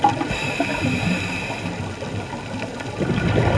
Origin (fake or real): real